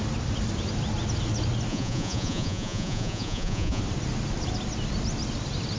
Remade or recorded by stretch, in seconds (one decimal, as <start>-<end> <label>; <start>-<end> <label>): 0.0-1.7 recorded; 1.7-3.8 remade; 3.8-5.8 recorded